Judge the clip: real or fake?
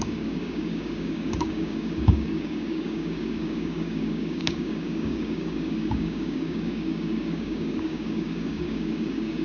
fake